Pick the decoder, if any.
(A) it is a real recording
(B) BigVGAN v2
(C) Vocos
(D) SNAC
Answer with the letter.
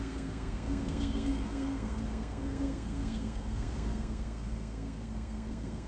D